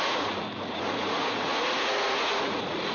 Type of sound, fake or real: fake